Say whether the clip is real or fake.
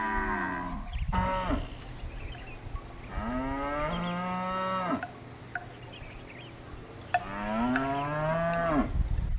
real